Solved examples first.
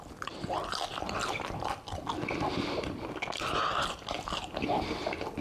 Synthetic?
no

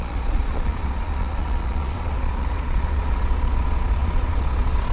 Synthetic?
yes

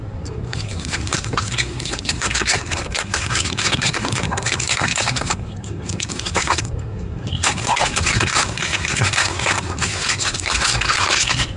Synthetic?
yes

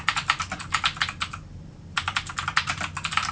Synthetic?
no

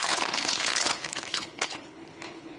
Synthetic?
yes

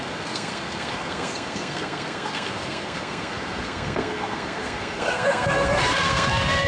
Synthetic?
yes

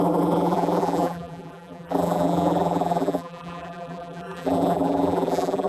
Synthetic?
yes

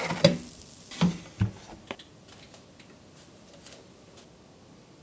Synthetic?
no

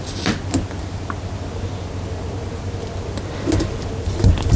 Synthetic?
no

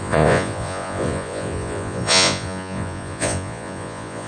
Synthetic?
yes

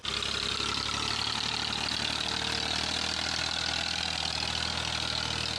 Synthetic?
no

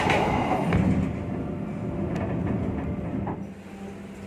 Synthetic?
no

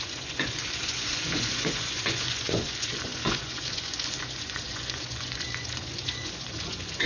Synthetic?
yes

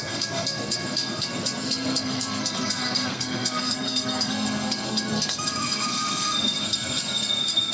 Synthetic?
yes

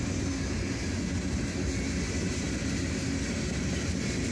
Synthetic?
no